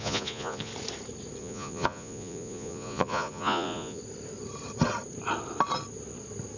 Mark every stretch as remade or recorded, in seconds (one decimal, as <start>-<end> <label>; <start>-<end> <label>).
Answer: 0.0-0.7 remade; 0.7-1.4 recorded; 1.4-4.0 remade; 4.0-6.6 recorded